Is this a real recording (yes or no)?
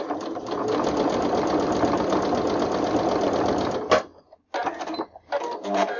yes